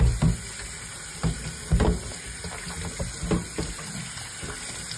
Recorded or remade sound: recorded